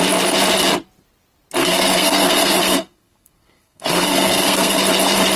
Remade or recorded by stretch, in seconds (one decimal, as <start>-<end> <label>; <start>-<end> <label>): 0.0-1.6 recorded; 1.6-4.8 remade; 4.8-5.4 recorded